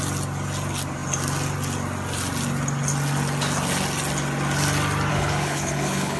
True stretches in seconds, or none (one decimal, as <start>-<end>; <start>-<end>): 0.0-5.1